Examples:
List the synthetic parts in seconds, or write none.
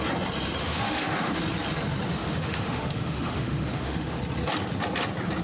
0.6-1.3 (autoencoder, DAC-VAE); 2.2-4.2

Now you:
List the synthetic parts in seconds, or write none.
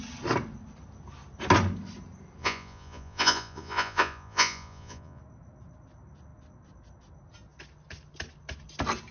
2.4-5.2 (vocoder, Vocos)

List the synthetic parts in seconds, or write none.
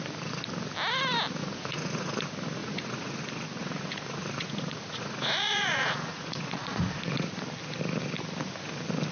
1.4-2.2 (vocoder, Vocos); 2.6-3.2; 3.6-7.3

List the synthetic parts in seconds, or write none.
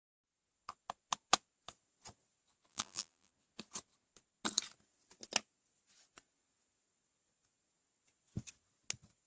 2.7-3.3 (vocoder, BigVGAN v2)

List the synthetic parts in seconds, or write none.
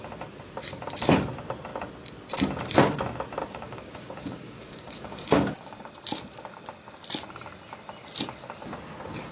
3.4-5.9 (codec, DAC)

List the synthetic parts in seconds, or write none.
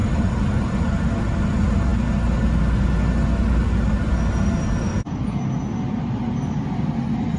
none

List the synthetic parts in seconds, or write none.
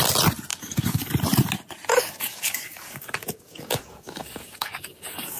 0.5-1.1 (codec, DAC); 1.9-5.4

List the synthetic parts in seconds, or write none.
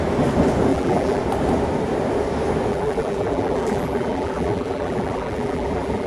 0.7-1.2 (vocoder, BigVGAN v2); 2.7-6.1